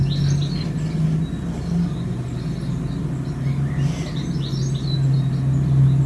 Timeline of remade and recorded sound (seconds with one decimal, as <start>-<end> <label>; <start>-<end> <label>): 0.0-6.1 recorded